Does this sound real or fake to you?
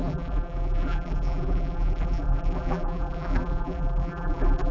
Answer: fake